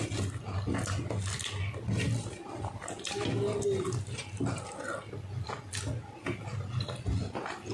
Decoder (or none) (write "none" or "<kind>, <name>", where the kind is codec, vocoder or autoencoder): none